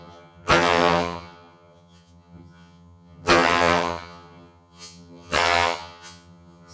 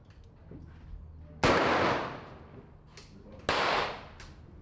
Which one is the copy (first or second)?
first